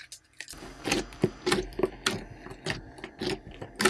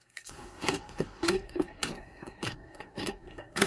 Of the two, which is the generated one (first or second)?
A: second